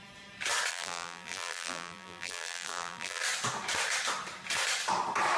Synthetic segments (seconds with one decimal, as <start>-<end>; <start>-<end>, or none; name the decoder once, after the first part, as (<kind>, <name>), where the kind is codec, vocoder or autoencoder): 0.7-3.2 (vocoder, BigVGAN v2)